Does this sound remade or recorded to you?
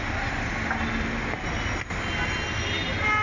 recorded